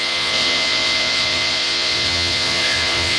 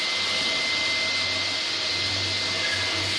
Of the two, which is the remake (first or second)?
first